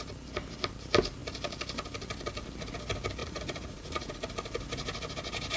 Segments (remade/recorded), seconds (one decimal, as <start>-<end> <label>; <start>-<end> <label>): 0.0-3.2 recorded; 3.2-4.1 remade; 4.1-5.6 recorded